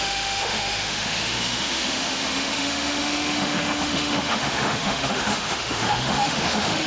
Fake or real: fake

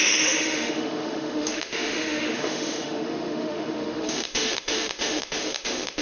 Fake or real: fake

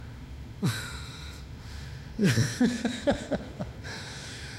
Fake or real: fake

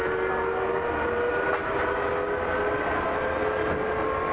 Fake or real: real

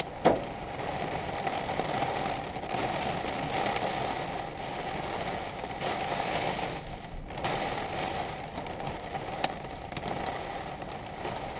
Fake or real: real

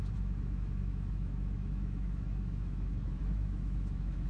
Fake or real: fake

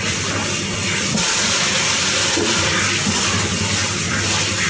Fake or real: real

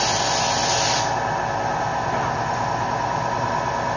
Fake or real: real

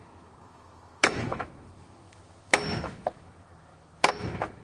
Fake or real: fake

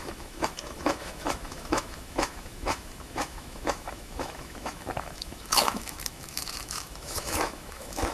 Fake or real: fake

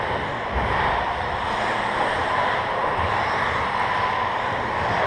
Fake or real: real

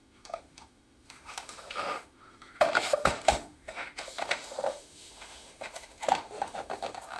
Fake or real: fake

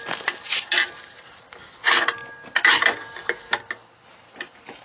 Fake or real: real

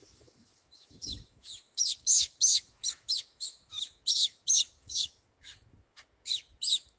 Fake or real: fake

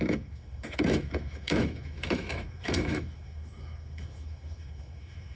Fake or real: fake